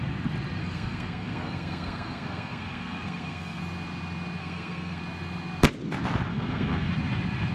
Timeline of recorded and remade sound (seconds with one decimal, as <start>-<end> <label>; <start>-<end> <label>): 0.0-0.6 recorded; 0.6-3.6 remade; 3.6-4.4 recorded; 4.4-5.0 remade; 5.0-6.3 recorded; 6.3-6.9 remade; 6.9-7.5 recorded